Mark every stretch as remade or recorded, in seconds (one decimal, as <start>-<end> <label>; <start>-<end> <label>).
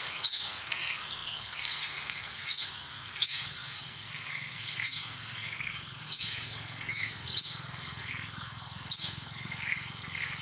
0.0-10.4 remade